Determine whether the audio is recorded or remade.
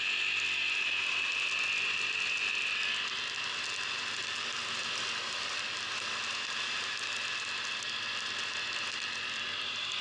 recorded